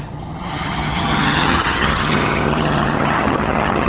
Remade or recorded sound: remade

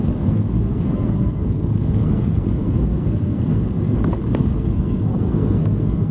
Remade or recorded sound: remade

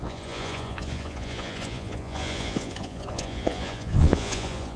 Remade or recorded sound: remade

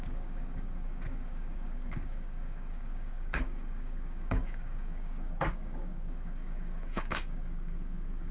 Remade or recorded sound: remade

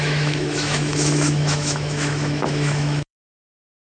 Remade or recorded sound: remade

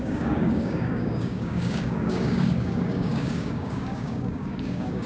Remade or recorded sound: remade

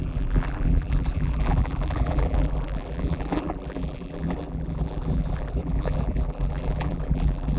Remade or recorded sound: remade